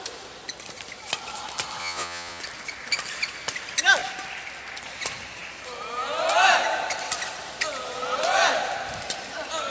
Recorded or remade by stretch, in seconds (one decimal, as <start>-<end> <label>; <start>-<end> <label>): 0.0-1.8 recorded; 1.8-2.4 remade; 2.4-9.7 recorded